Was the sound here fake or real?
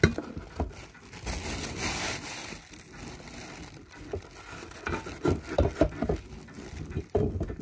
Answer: real